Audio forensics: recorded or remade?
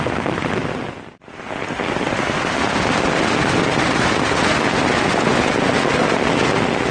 recorded